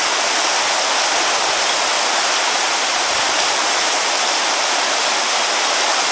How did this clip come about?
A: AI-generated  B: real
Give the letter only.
B